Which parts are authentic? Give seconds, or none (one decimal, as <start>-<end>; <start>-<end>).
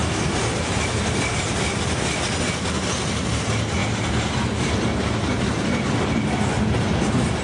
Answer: 0.0-7.4